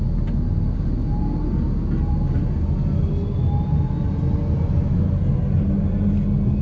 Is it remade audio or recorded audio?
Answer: recorded